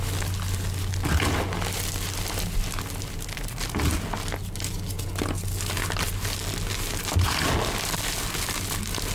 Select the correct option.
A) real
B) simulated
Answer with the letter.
A